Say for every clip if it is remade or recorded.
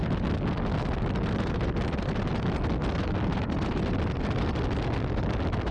recorded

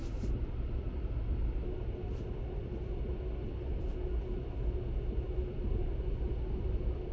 recorded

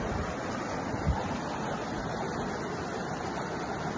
recorded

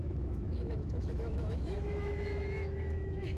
remade